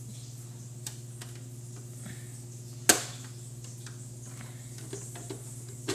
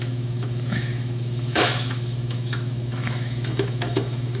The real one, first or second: first